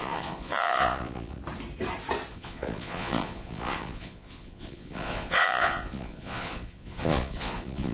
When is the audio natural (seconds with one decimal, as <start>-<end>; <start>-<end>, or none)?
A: 1.4-2.3